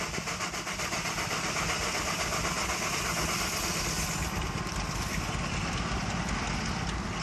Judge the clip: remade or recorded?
recorded